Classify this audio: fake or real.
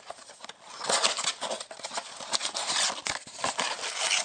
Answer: real